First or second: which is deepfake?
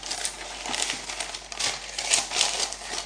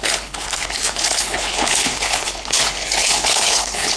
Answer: second